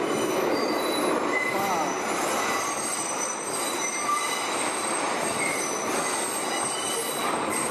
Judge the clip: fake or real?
real